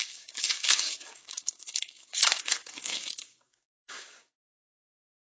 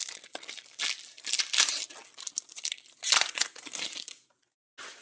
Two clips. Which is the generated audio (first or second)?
first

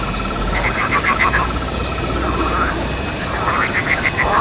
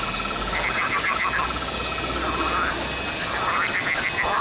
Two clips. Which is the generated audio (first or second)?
first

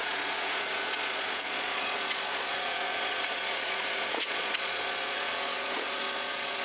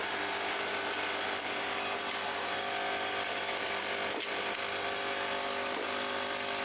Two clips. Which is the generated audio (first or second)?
first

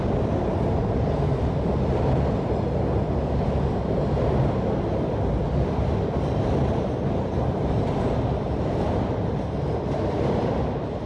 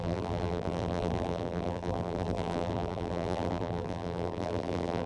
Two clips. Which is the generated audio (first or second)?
second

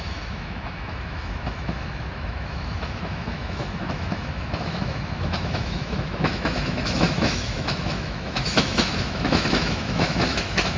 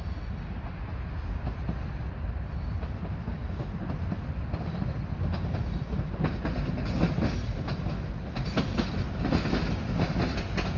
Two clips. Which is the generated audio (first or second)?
first